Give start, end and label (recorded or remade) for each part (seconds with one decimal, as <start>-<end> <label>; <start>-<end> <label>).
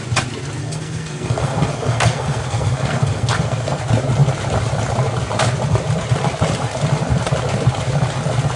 0.0-0.6 recorded; 0.6-3.8 remade; 3.8-8.6 recorded